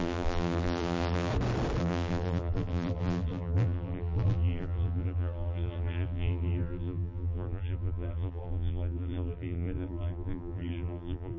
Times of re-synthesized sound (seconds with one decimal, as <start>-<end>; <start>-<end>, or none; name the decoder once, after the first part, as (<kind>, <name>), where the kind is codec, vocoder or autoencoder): 0.0-1.3 (vocoder, BigVGAN v2); 1.8-11.4